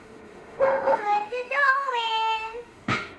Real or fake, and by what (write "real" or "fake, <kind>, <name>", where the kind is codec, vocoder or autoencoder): fake, autoencoder, DAC-VAE